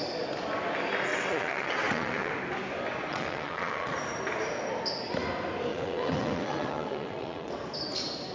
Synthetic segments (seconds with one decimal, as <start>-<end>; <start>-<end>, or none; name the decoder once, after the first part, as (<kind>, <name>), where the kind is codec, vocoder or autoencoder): 1.1-2.3 (vocoder, WaveNeXt); 3.1-3.9; 5.7-7.5